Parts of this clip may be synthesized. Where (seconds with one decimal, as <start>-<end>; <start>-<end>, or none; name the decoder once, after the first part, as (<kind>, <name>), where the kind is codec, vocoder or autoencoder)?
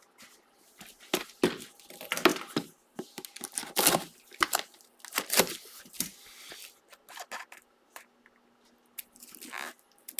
none